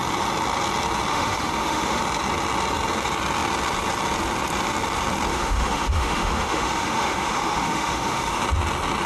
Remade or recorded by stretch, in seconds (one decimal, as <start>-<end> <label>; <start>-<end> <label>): 0.0-1.1 recorded; 1.1-2.0 remade; 2.0-5.3 recorded; 5.3-8.4 remade; 8.4-9.1 recorded